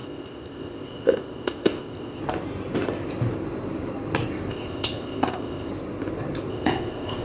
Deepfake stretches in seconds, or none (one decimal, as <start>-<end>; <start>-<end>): 0.0-2.2; 4.5-5.7; 6.5-7.2